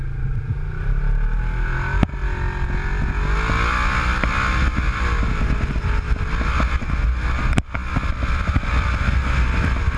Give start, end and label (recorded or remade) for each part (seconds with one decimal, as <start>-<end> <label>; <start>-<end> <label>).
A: 0.0-10.0 recorded